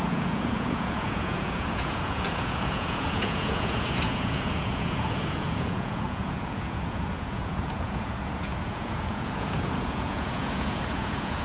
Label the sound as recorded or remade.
remade